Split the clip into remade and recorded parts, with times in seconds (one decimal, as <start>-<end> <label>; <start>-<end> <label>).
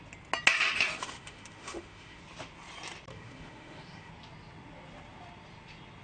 0.0-1.0 recorded; 1.0-2.2 remade; 2.2-3.1 recorded; 3.1-4.1 remade; 4.1-6.0 recorded